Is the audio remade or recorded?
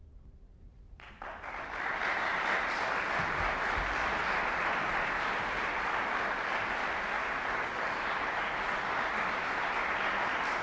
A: recorded